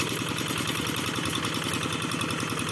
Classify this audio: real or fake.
real